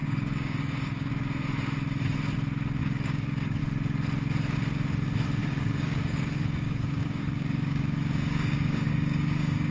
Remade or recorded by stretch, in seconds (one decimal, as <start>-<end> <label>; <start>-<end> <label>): 0.0-1.1 remade; 1.1-2.8 recorded; 2.8-3.6 remade; 3.6-5.4 recorded; 5.4-9.7 remade